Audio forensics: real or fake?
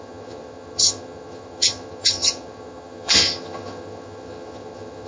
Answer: fake